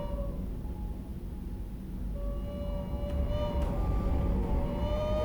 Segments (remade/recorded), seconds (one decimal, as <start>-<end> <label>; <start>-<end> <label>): 0.0-5.2 recorded

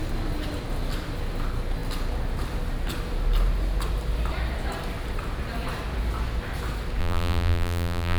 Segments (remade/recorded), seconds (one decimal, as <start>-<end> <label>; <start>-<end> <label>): 0.0-7.0 recorded; 7.0-8.2 remade

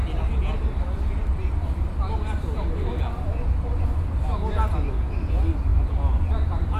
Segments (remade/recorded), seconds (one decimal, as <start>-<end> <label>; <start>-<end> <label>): 0.0-6.8 recorded

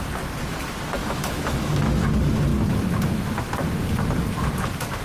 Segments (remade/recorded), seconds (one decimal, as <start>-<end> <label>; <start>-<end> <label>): 0.0-1.0 recorded; 1.0-2.0 remade; 2.0-5.0 recorded